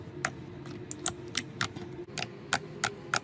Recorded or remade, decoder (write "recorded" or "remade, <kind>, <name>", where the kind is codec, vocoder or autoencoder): recorded